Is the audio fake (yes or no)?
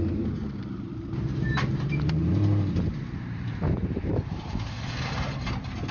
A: yes